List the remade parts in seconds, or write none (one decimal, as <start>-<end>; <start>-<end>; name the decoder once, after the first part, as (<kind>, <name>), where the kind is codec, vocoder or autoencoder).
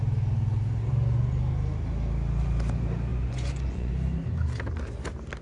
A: 3.1-3.9 (vocoder, Vocos)